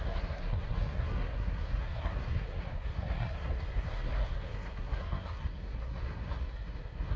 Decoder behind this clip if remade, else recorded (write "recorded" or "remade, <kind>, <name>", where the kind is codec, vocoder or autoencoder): remade, codec, SNAC